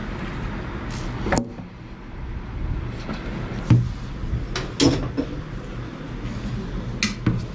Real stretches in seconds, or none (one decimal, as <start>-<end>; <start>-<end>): 0.0-7.5